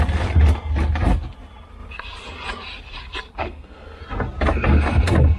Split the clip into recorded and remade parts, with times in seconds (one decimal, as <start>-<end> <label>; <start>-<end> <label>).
0.0-3.4 recorded; 3.4-4.0 remade; 4.0-5.4 recorded